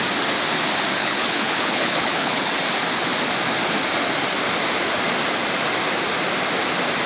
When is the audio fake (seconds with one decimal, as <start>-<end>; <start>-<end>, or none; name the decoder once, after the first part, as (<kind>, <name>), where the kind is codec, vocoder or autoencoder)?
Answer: 1.0-2.5 (codec, HILCodec)